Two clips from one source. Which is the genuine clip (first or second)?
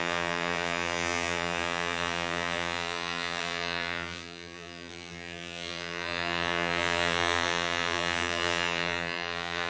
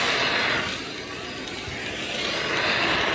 second